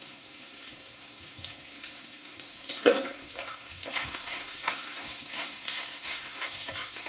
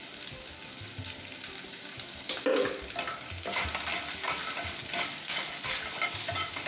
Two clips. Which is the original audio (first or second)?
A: second